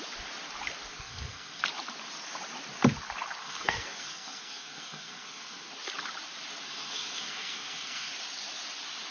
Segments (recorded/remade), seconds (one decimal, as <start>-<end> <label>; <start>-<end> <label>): 0.0-0.9 recorded; 0.9-1.6 remade; 1.6-3.4 recorded; 3.4-5.7 remade; 5.7-6.6 recorded; 6.6-8.1 remade; 8.1-9.1 recorded

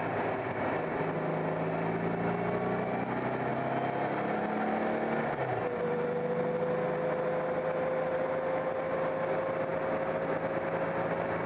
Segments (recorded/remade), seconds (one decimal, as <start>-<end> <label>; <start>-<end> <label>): 0.0-11.5 recorded

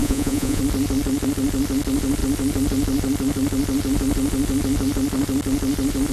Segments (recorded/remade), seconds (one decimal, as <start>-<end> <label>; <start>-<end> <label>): 0.0-0.6 remade; 0.6-6.1 recorded

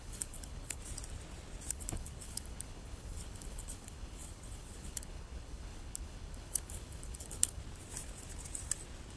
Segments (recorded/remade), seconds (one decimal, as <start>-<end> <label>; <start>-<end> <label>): 0.0-0.8 remade; 0.8-1.7 recorded; 1.7-7.6 remade; 7.6-9.2 recorded

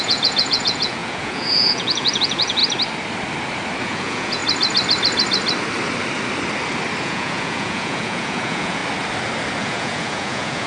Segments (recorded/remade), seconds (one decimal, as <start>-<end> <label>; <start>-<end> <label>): 0.0-2.6 remade; 2.6-3.8 recorded; 3.8-4.4 remade; 4.4-7.0 recorded; 7.0-8.8 remade; 8.8-9.6 recorded; 9.6-10.7 remade